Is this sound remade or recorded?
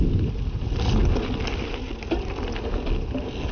recorded